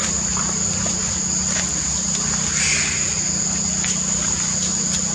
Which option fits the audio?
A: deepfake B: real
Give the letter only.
B